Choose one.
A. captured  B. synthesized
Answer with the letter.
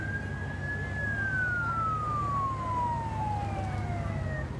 A